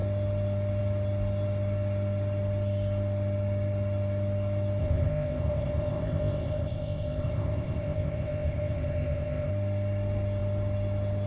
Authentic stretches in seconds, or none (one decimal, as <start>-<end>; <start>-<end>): 0.0-4.8; 9.5-11.3